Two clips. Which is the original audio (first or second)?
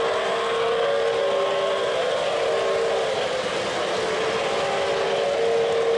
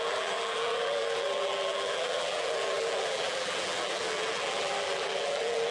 first